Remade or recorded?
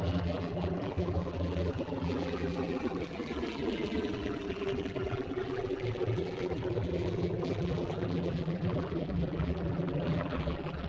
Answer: remade